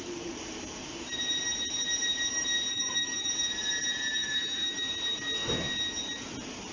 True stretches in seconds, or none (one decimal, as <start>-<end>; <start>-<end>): 0.0-2.7; 3.3-4.2; 4.9-6.7